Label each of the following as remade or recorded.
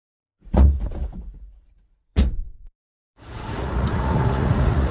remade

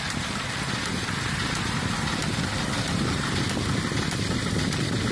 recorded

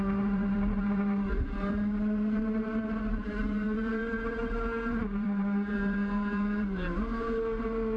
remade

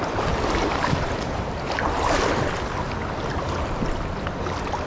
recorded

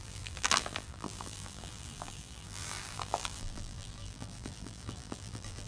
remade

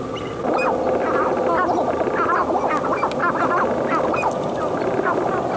recorded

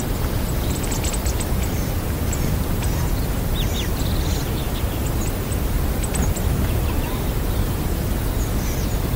recorded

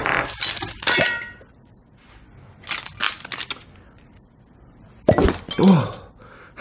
recorded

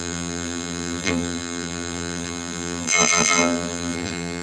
remade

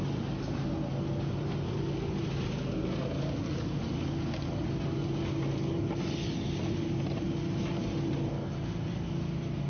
recorded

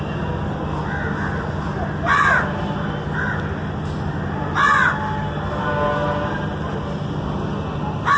recorded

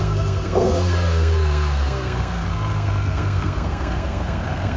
remade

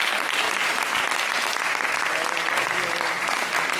recorded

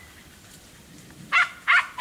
recorded